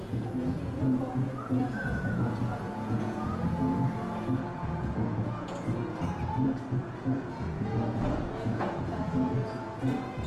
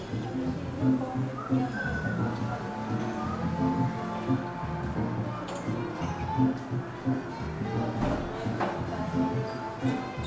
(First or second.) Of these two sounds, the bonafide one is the second